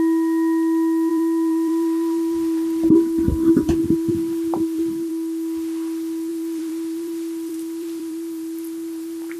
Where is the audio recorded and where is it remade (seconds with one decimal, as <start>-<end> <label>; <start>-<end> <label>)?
0.0-1.1 recorded; 1.1-5.1 remade; 5.1-6.3 recorded; 6.3-9.4 remade